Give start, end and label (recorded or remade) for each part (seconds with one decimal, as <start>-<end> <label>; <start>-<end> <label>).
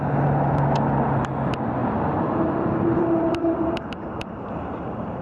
0.0-1.8 recorded; 1.8-5.2 remade